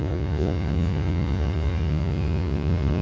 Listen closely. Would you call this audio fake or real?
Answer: fake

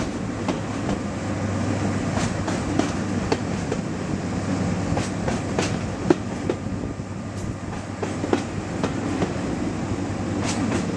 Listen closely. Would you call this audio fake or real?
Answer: real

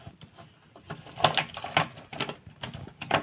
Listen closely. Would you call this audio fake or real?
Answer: real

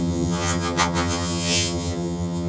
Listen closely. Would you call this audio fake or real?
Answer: fake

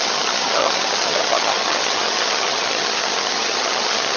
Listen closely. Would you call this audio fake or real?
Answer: fake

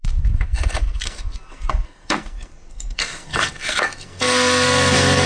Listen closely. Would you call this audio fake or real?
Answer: fake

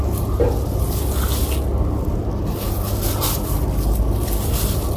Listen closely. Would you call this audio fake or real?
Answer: real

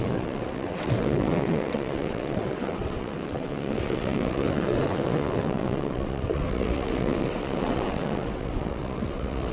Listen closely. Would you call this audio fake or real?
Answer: fake